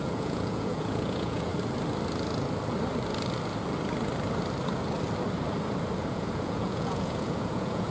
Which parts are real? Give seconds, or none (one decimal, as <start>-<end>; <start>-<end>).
1.5-6.1